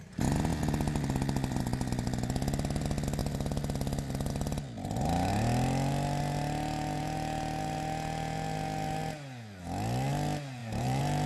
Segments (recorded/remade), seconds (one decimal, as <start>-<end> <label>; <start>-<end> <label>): 0.0-10.6 recorded; 10.6-11.3 remade